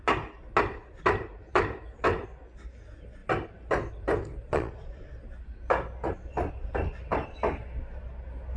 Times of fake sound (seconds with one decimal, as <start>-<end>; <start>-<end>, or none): 4.5-5.1